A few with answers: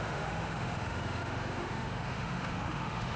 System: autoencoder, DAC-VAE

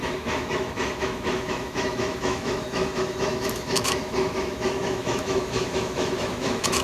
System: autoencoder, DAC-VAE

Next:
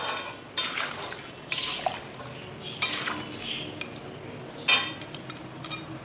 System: none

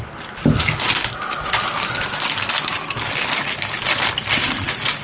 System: none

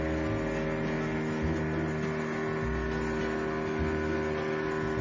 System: none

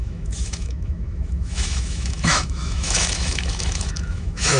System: autoencoder, DAC-VAE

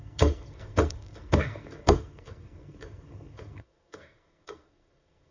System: codec, SNAC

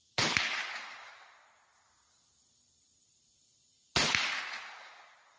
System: none